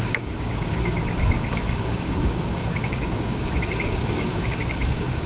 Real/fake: fake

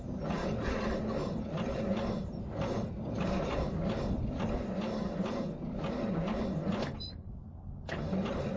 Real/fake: real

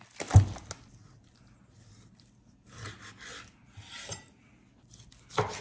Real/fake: real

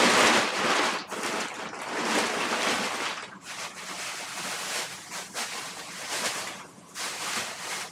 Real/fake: real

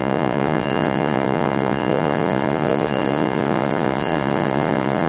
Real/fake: fake